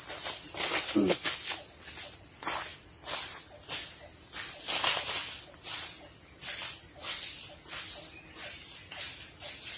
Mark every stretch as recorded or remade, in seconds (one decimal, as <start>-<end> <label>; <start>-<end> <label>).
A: 0.0-9.8 recorded